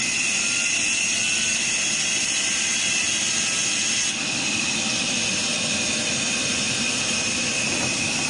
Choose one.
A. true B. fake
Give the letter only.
A